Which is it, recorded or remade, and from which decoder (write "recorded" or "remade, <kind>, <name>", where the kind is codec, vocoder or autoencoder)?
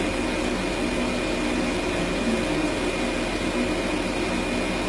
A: recorded